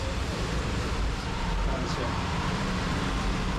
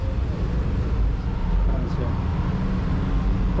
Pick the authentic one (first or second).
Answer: second